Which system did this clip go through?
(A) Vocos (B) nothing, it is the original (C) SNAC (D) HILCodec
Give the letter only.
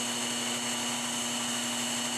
B